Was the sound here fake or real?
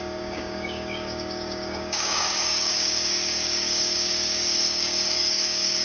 fake